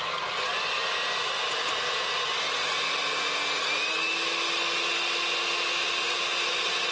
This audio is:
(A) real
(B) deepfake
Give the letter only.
A